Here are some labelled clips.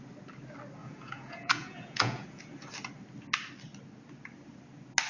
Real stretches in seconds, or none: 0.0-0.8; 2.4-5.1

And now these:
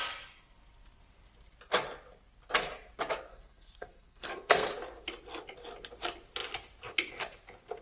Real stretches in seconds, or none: 0.0-3.3; 4.7-7.8

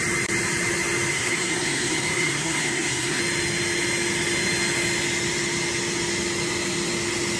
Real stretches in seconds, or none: 0.0-1.1; 3.2-7.4

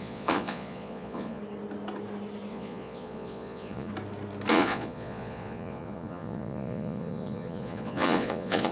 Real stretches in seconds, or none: 1.4-2.5; 3.9-4.5

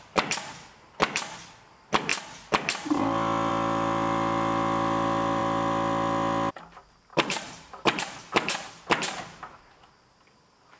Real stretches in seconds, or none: 0.0-7.1; 8.0-10.8

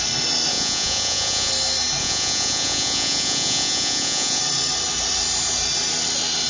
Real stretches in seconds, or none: 0.0-0.5; 1.5-2.0; 4.4-6.5

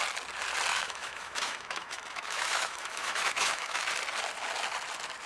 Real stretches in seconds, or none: 0.0-0.7; 3.9-5.3

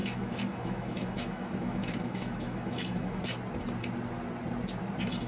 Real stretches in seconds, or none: 3.2-5.3